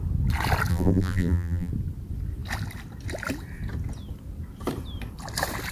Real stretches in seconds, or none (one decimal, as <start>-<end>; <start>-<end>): 0.0-0.7; 1.7-5.7